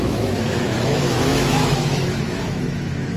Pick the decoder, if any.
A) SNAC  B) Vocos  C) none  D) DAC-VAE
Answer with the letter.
D